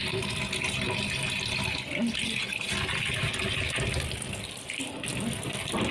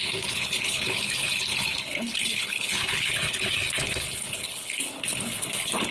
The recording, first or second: first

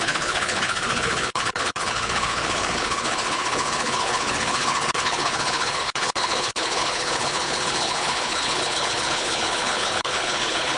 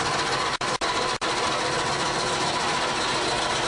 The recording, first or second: second